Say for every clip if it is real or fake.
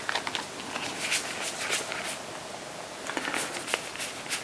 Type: real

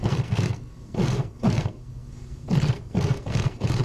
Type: fake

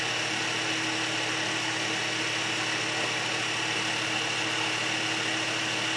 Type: real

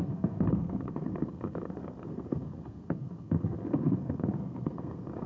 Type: fake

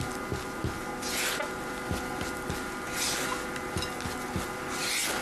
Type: real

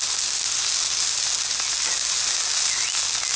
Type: real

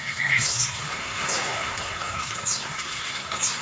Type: fake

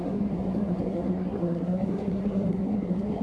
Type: fake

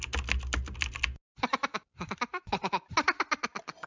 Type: real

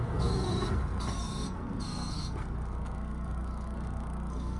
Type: fake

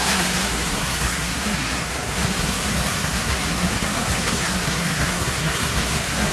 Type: fake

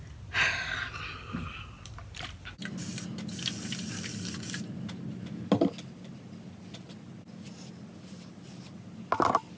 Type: real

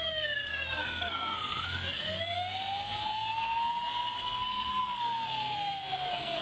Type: fake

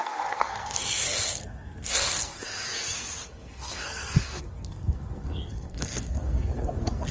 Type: fake